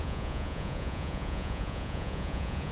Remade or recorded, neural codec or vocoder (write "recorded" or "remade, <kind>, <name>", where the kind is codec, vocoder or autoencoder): remade, vocoder, Vocos